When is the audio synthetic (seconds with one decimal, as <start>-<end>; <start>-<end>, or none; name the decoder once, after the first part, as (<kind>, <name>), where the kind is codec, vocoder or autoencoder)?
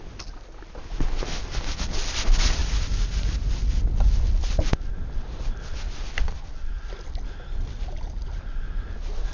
none